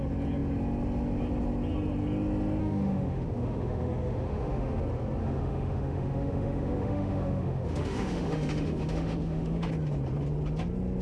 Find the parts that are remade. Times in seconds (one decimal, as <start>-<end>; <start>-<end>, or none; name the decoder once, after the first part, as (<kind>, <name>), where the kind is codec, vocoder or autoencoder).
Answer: 2.6-4.8 (autoencoder, DAC-VAE); 5.2-9.7